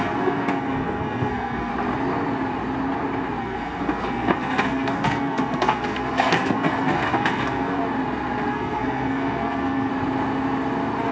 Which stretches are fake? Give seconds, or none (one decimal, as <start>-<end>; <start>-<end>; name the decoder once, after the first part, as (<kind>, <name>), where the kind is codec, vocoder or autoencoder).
0.0-1.7 (codec, SNAC); 3.4-7.8; 8.5-9.9